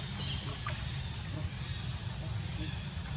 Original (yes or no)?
yes